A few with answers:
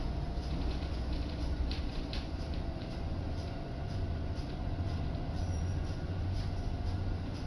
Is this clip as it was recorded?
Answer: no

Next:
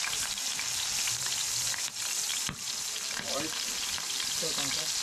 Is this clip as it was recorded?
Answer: yes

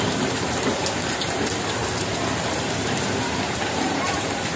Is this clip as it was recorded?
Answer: no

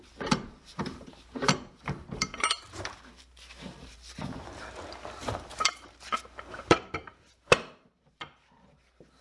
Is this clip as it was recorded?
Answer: no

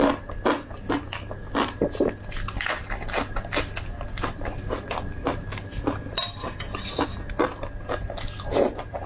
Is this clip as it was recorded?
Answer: yes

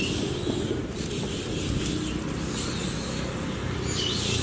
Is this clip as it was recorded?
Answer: yes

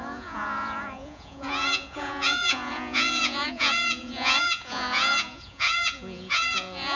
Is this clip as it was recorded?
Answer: no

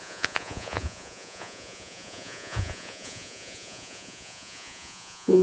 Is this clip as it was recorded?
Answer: no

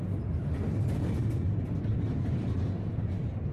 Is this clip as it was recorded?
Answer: yes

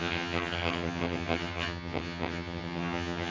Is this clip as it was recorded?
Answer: no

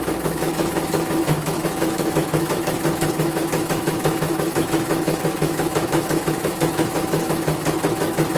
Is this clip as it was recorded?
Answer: no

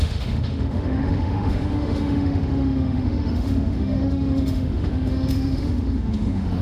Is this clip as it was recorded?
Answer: no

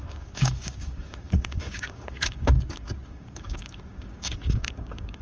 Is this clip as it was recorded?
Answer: no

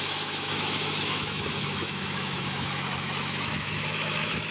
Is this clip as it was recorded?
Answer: no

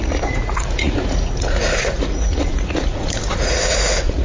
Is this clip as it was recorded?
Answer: no